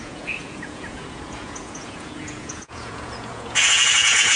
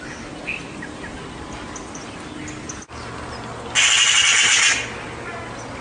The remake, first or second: first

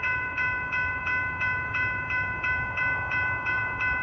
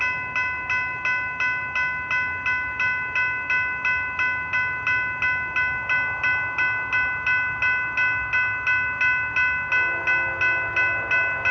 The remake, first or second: first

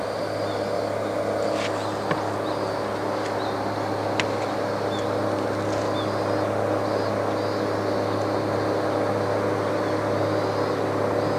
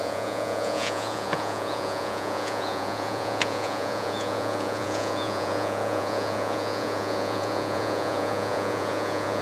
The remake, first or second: second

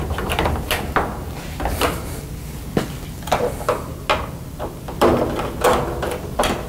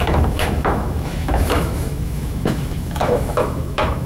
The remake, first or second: second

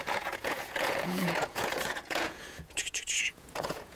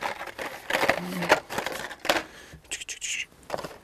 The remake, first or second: first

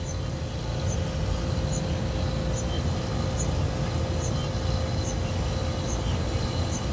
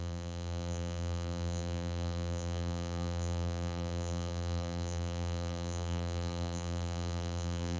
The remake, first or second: second